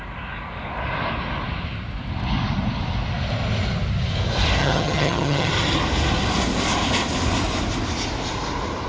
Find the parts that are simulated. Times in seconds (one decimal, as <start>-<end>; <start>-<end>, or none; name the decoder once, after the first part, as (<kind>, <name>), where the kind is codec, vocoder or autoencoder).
4.6-5.5 (vocoder, HiFi-GAN)

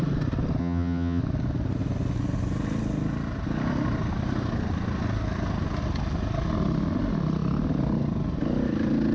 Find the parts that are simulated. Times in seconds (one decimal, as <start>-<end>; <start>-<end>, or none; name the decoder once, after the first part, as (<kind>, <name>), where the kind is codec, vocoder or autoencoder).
0.6-1.2 (vocoder, HiFi-GAN)